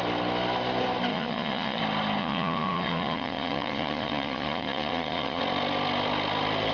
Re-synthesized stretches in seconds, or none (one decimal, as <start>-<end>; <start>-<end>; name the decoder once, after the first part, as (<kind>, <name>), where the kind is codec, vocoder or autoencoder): 1.1-1.8 (vocoder, Vocos); 2.2-5.4